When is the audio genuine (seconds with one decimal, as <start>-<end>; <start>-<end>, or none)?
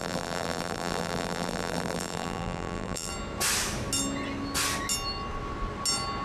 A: 3.1-6.2